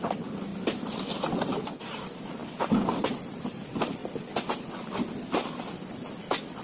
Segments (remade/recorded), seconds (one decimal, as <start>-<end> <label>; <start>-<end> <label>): 0.0-0.5 remade; 0.5-1.8 recorded; 1.8-2.4 remade; 2.4-3.4 recorded; 3.4-4.0 remade; 4.0-4.7 recorded; 4.7-6.6 remade